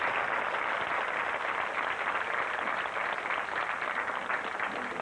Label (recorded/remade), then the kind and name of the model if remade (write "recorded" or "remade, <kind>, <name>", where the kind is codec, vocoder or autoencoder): recorded